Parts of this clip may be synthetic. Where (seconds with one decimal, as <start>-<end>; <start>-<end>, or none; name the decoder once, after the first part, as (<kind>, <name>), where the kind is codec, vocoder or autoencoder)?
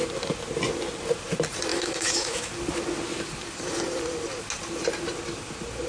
1.7-2.5 (autoencoder, DAC-VAE)